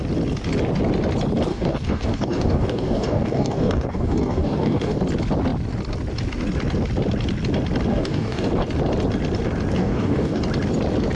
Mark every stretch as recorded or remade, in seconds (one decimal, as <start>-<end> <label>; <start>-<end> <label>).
0.0-1.5 recorded; 1.5-5.0 remade; 5.0-7.9 recorded; 7.9-8.5 remade; 8.5-9.8 recorded; 9.8-10.4 remade; 10.4-11.1 recorded

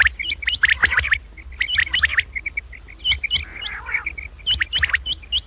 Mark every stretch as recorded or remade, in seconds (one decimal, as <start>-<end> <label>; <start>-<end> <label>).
0.0-5.5 recorded

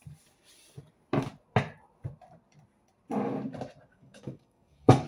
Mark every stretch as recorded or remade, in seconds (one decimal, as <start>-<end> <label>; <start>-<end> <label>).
0.0-3.9 recorded; 3.9-5.1 remade

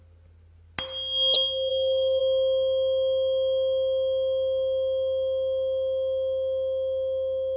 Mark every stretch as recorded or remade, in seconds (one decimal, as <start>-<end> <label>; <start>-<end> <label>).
0.0-1.7 recorded; 1.7-2.2 remade; 2.2-7.6 recorded

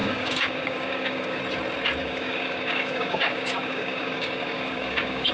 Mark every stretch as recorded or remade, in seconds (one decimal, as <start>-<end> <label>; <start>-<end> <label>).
0.0-1.4 remade; 1.4-2.0 recorded; 2.0-5.3 remade

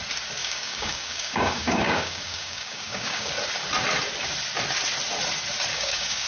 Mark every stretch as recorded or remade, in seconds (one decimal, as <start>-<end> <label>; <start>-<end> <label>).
0.0-0.4 recorded; 0.4-3.3 remade; 3.3-5.7 recorded; 5.7-6.3 remade

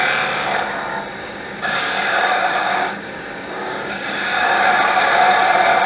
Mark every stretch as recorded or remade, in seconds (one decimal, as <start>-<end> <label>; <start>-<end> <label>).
0.0-1.2 recorded; 1.2-4.7 remade; 4.7-5.9 recorded